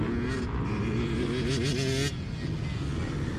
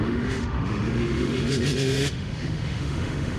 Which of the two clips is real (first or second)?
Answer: first